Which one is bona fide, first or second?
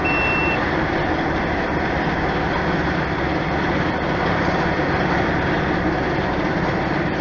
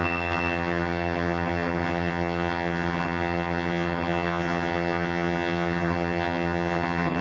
first